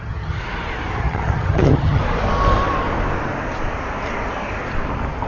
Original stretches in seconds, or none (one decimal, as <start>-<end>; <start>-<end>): 0.4-1.0; 2.0-5.3